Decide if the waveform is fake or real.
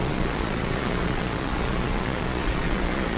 fake